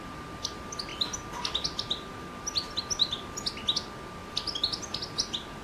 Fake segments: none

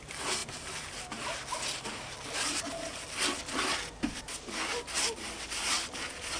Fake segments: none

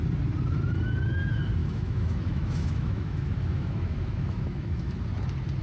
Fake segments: 1.6-5.0 (autoencoder, DAC-VAE)